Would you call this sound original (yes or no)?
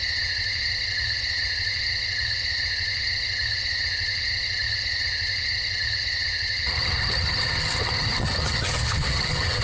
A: no